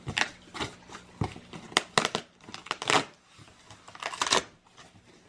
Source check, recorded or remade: recorded